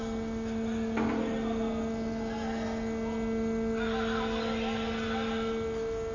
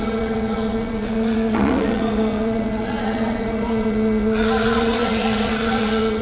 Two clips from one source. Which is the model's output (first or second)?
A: second